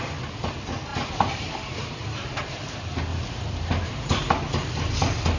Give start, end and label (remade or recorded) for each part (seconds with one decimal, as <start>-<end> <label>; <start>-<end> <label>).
0.0-0.9 recorded; 0.9-2.6 remade; 2.6-3.1 recorded; 3.1-4.3 remade; 4.3-5.4 recorded